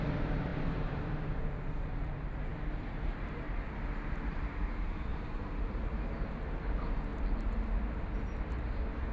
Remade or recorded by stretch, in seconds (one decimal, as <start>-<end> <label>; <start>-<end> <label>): 0.0-2.5 remade; 2.5-3.9 recorded; 3.9-7.1 remade; 7.1-8.4 recorded; 8.4-9.1 remade